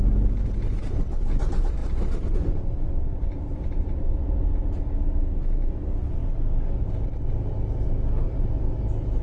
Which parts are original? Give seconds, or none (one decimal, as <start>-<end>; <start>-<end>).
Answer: 0.0-1.8; 2.6-9.2